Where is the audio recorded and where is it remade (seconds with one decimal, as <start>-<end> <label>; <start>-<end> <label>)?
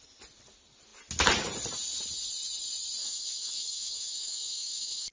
0.0-3.0 recorded; 3.0-5.1 remade